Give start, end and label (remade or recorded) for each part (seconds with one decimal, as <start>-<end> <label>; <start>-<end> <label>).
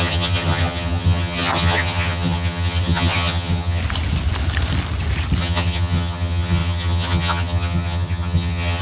0.0-3.8 remade; 3.8-5.4 recorded; 5.4-8.8 remade